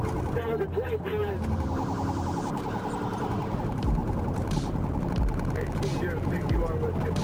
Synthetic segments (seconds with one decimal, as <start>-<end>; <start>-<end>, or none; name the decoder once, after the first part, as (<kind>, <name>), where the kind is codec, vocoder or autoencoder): 4.0-5.1 (vocoder, BigVGAN v2)

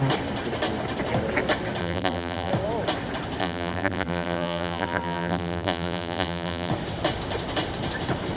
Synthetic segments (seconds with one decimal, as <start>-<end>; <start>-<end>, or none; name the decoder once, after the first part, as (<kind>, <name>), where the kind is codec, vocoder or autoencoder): 1.8-2.5 (vocoder, BigVGAN v2); 3.4-6.7

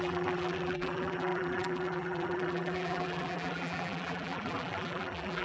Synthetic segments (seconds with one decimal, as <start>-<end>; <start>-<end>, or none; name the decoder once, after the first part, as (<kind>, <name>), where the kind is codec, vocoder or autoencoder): 0.0-5.4 (vocoder, BigVGAN v2)

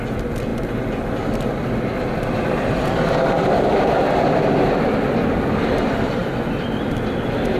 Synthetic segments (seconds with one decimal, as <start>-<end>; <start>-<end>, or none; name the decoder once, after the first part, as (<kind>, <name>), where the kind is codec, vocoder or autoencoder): none

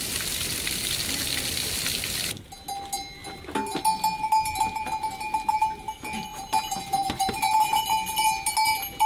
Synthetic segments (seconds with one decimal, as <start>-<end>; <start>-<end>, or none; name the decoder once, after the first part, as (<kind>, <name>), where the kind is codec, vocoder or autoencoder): 6.3-7.4 (vocoder, BigVGAN v2)

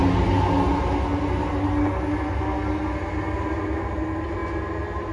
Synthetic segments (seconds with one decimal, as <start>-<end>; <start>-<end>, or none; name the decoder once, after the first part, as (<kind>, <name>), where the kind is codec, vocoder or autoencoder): none

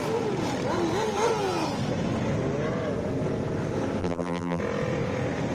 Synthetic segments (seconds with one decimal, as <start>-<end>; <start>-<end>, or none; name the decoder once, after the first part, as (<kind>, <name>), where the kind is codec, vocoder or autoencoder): 4.0-4.6 (vocoder, BigVGAN v2)

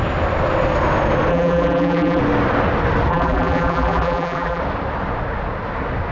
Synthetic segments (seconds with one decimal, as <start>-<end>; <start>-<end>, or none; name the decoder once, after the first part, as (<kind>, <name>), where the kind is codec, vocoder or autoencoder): 1.3-2.2 (vocoder, BigVGAN v2); 3.1-4.6